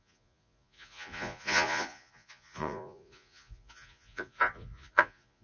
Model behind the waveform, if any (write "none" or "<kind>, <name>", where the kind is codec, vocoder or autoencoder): vocoder, Vocos